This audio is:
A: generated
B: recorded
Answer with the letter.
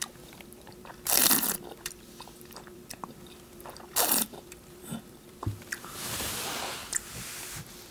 A